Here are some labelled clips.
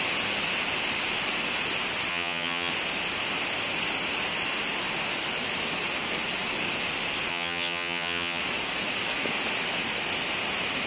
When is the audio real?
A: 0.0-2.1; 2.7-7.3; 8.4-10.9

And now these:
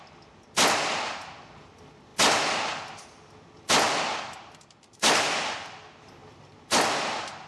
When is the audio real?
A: 0.0-7.5

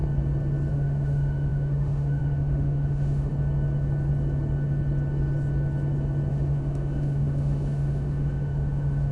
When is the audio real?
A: 0.0-0.7; 3.3-6.3